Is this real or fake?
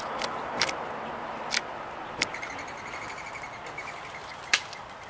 real